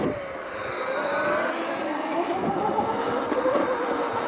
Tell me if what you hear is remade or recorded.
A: recorded